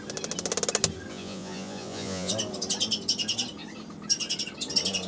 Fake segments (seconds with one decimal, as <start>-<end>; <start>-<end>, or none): 1.1-2.3